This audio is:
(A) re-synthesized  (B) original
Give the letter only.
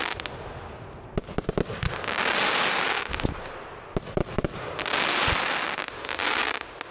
B